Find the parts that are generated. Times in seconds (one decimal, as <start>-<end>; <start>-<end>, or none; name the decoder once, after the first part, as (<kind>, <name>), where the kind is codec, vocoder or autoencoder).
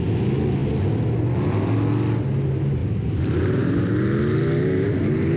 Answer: 2.8-3.9 (vocoder, BigVGAN v2)